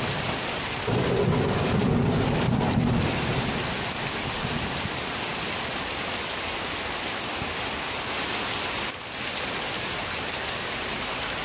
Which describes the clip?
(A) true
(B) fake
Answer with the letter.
A